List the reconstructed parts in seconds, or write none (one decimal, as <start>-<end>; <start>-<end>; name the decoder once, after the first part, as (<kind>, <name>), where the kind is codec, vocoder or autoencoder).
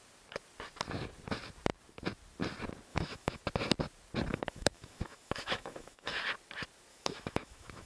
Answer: 2.9-3.4 (autoencoder, DAC-VAE); 4.3-6.2; 6.9-7.9